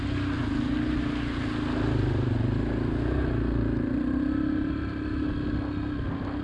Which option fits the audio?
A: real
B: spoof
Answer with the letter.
A